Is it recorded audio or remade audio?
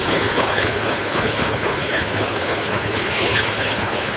remade